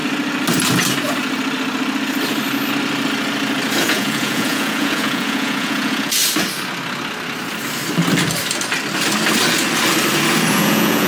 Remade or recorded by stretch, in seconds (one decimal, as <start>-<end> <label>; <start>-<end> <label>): 0.0-3.8 recorded; 3.8-6.2 remade; 6.2-10.5 recorded; 10.5-11.1 remade